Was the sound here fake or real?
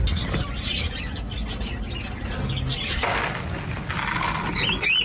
real